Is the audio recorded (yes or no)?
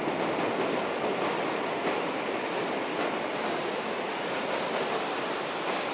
yes